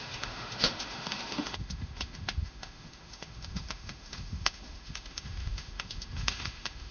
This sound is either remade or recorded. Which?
remade